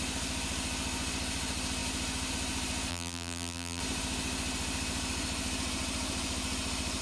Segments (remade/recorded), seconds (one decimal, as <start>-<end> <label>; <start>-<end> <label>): 0.0-2.9 recorded; 2.9-3.8 remade; 3.8-7.0 recorded